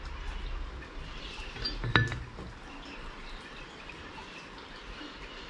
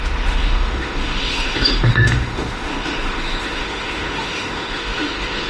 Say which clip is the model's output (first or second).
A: second